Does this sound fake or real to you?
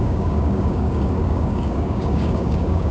fake